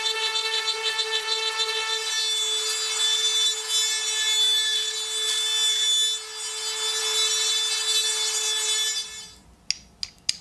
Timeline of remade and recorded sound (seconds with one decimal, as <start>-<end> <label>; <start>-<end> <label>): 0.0-10.4 recorded